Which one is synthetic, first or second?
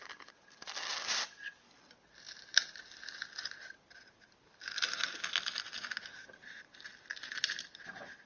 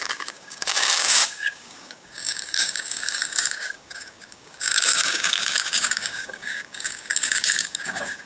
second